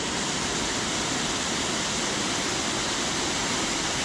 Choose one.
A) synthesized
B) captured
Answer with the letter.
B